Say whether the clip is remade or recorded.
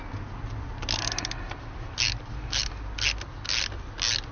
recorded